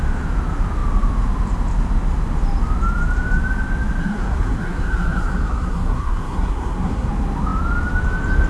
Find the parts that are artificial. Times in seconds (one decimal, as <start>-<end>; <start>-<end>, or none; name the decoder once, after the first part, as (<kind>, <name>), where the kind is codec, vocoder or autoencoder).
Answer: 4.0-7.1 (codec, SNAC)